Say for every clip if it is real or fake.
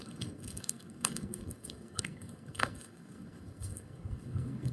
fake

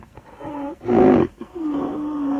fake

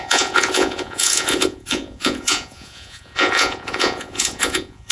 fake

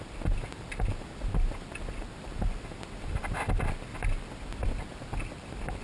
real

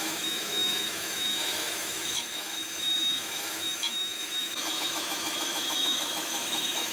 fake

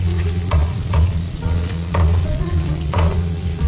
fake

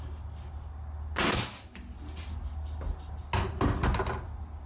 real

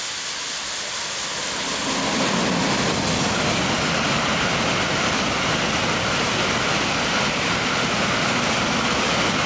real